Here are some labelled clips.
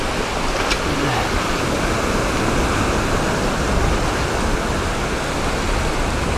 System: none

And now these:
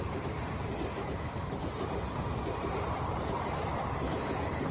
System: vocoder, BigVGAN v2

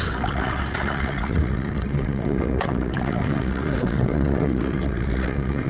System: vocoder, WaveNeXt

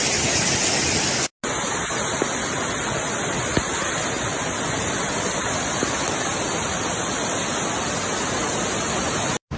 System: none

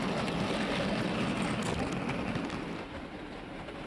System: none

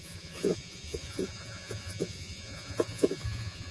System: vocoder, Vocos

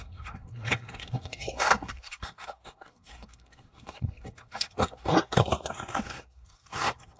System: codec, SNAC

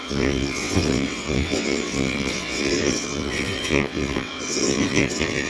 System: vocoder, WaveNeXt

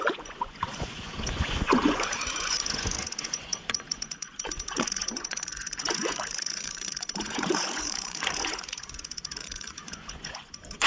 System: vocoder, Vocos